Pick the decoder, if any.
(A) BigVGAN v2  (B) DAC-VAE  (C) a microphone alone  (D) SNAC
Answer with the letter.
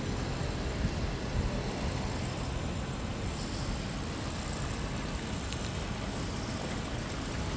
C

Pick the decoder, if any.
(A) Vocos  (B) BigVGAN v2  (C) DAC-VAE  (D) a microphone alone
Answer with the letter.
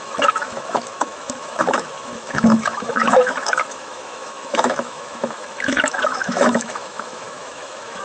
C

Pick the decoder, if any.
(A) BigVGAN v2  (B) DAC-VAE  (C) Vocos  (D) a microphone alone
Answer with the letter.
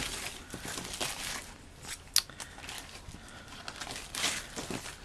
D